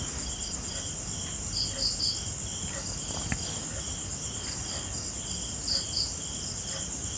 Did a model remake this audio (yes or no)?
no